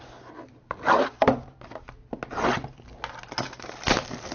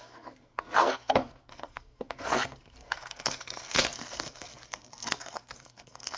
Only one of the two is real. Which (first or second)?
first